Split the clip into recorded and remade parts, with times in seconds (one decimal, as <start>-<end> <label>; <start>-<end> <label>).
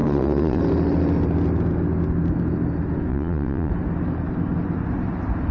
0.0-0.6 remade; 0.6-3.1 recorded; 3.1-3.7 remade; 3.7-5.5 recorded